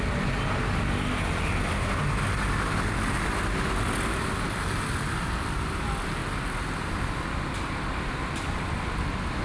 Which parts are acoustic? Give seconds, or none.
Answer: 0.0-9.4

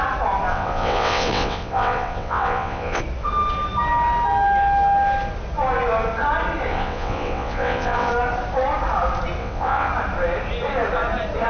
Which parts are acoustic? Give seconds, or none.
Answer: 0.0-0.5; 3.0-6.7; 8.1-9.4; 9.9-11.5

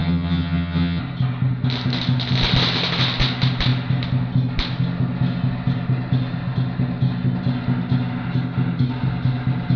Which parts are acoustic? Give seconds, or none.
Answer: 1.0-9.8

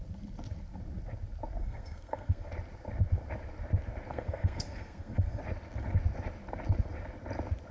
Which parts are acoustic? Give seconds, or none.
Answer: 0.0-1.6; 2.5-4.1; 5.4-7.7

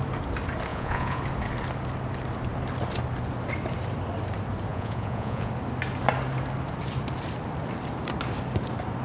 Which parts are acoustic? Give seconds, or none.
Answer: 0.0-0.7; 1.2-4.7; 5.5-9.0

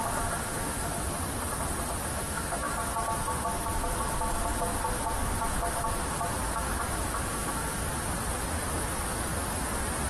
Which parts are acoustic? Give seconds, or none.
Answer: 0.0-0.4; 0.9-2.1; 2.7-7.3; 7.9-10.1